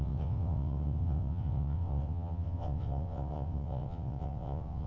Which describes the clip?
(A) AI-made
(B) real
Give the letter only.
A